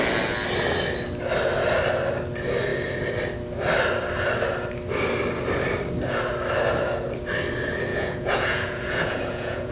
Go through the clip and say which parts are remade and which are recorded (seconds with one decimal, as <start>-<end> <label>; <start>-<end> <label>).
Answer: 0.0-7.9 recorded; 7.9-9.7 remade